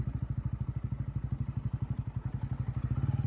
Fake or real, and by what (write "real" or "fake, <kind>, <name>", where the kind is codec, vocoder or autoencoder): real